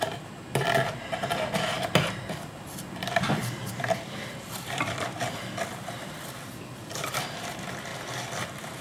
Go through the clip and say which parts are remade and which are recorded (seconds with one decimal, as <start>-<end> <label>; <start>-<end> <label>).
0.0-8.8 remade